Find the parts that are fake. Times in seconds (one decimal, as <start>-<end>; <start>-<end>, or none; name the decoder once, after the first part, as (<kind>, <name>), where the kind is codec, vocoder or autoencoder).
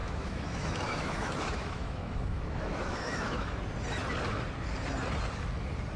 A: 0.0-3.6 (autoencoder, DAC-VAE)